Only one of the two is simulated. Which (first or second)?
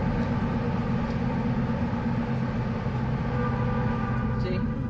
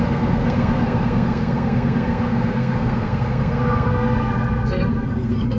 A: second